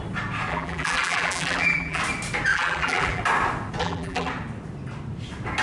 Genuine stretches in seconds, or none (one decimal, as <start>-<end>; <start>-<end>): 0.0-0.5; 2.0-2.5; 3.2-3.8; 4.3-5.6